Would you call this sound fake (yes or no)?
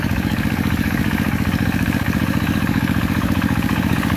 yes